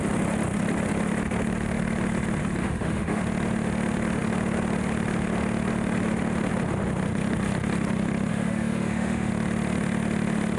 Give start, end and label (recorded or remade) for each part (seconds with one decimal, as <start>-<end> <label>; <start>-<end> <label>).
0.0-2.6 recorded; 2.6-3.2 remade; 3.2-8.3 recorded; 8.3-9.3 remade; 9.3-10.6 recorded